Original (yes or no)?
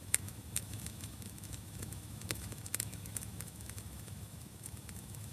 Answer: no